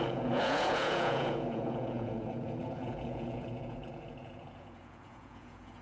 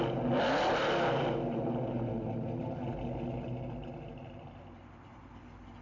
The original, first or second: second